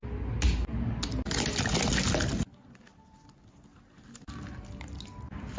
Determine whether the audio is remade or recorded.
recorded